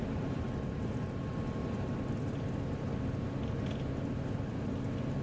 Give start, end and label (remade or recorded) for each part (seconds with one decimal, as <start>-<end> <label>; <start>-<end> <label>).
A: 0.0-5.2 remade